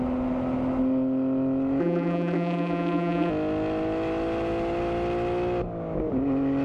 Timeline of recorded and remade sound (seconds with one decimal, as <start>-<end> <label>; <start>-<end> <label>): 0.0-1.8 recorded; 1.8-3.3 remade; 3.3-6.6 recorded